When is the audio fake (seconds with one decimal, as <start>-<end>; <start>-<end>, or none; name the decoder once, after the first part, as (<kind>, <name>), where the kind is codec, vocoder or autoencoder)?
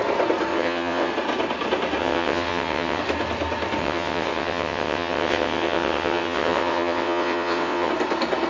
0.5-1.1 (vocoder, WaveNeXt); 2.0-3.0; 3.8-7.9